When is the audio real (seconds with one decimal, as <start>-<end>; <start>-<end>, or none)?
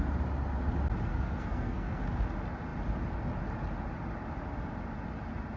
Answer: 0.0-1.1; 2.0-5.6